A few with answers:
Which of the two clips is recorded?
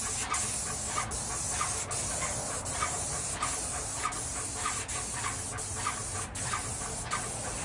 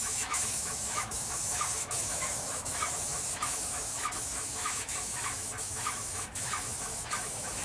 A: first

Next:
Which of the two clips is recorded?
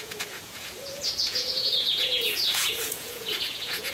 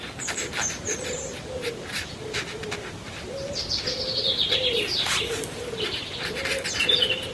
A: second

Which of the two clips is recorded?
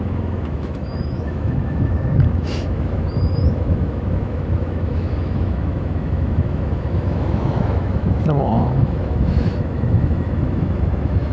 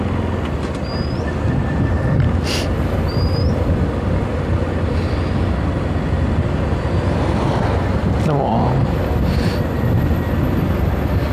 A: second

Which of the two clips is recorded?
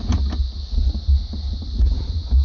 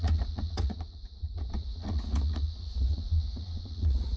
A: first